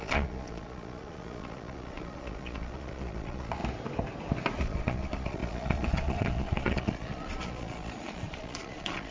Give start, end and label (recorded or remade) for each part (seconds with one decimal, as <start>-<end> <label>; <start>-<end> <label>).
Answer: 0.0-3.6 remade; 3.6-4.6 recorded; 4.6-9.1 remade